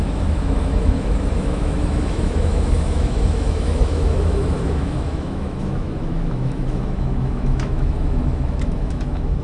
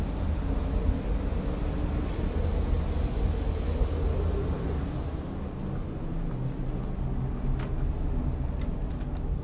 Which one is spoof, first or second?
first